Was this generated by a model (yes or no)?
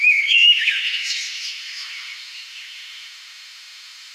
yes